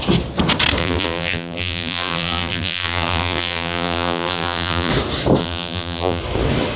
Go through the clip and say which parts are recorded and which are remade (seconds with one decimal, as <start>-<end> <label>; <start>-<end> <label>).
0.0-0.8 recorded; 0.8-4.9 remade; 4.9-5.4 recorded; 5.4-6.2 remade; 6.2-6.8 recorded